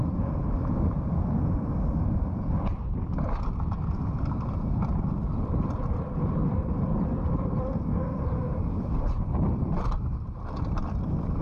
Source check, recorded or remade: recorded